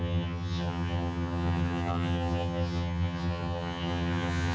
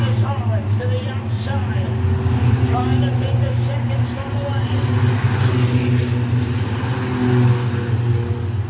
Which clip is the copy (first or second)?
first